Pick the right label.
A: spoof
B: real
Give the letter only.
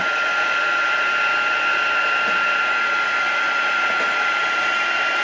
B